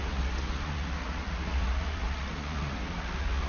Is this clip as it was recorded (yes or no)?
no